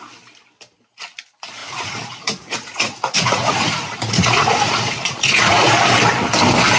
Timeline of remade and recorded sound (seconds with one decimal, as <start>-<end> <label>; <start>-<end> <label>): 0.0-1.6 recorded; 1.6-5.7 remade; 5.7-6.8 recorded